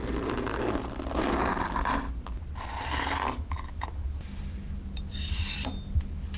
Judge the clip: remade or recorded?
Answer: recorded